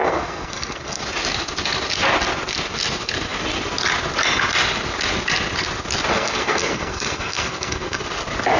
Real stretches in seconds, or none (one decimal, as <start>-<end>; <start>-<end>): 1.0-6.1; 8.0-8.6